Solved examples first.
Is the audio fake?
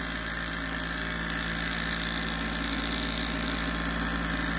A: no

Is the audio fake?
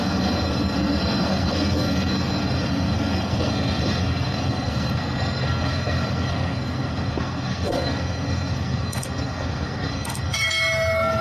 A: yes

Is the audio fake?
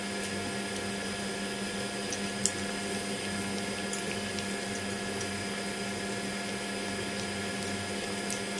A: no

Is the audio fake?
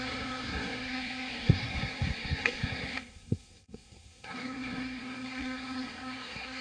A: yes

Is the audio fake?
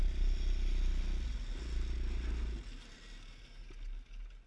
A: no